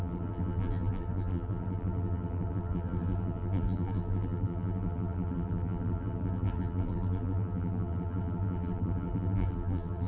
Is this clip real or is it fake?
fake